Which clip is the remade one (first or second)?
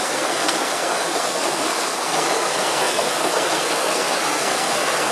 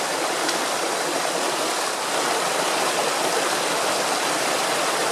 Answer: first